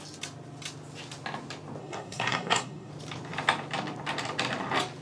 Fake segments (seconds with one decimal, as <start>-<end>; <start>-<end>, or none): 1.8-2.9